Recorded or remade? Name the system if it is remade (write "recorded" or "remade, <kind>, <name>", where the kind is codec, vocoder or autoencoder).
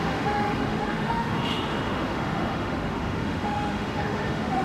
remade, autoencoder, DAC-VAE